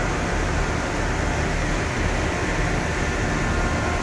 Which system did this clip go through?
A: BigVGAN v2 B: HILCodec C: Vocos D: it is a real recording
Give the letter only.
D